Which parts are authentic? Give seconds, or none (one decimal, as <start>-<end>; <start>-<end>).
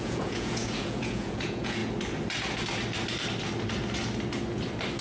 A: 1.8-5.0